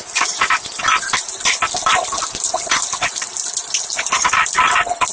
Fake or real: real